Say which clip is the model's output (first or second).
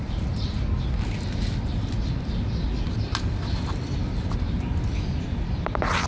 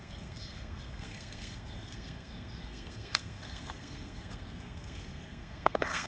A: second